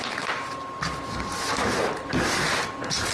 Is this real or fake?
real